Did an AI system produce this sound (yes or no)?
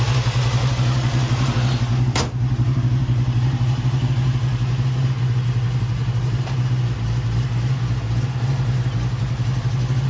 no